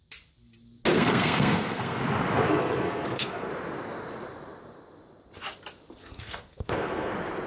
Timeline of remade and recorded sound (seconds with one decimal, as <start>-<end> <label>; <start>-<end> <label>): 0.0-0.9 recorded; 0.9-2.0 remade; 2.0-2.5 recorded; 2.5-3.5 remade; 3.5-6.0 recorded; 6.0-7.1 remade; 7.1-7.5 recorded